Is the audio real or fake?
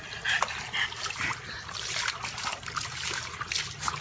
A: real